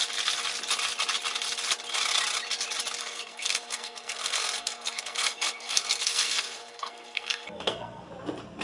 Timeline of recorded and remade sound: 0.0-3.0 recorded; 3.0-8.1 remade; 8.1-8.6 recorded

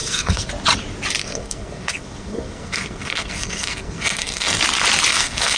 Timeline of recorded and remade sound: 0.0-0.5 remade; 0.5-1.2 recorded; 1.2-4.6 remade; 4.6-5.1 recorded; 5.1-5.6 remade

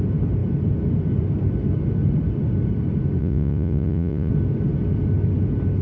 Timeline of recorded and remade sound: 0.0-3.2 recorded; 3.2-4.3 remade; 4.3-5.8 recorded

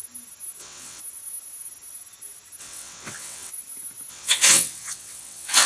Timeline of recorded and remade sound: 0.0-0.6 recorded; 0.6-1.0 remade; 1.0-2.6 recorded; 2.6-3.5 remade; 3.5-4.1 recorded; 4.1-5.7 remade

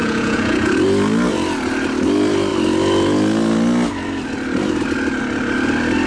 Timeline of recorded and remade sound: 0.0-0.7 remade; 0.7-6.1 recorded